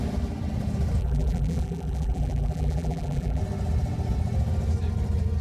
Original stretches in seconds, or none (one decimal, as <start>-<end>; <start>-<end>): 0.0-1.0; 3.4-5.4